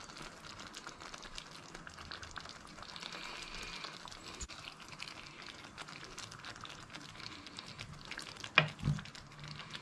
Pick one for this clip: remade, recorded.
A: recorded